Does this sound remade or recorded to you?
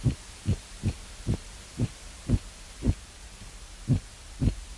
recorded